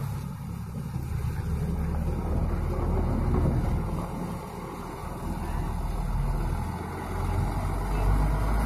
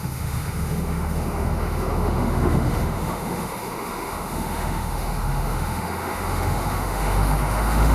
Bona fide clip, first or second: first